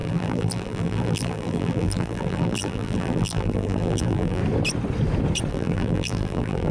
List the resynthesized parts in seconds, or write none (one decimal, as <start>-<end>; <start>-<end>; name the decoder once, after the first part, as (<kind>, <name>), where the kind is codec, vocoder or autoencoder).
0.0-4.4 (vocoder, BigVGAN v2); 5.5-6.7